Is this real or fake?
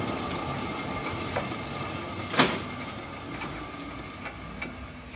real